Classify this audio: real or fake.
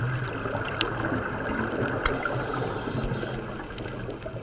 real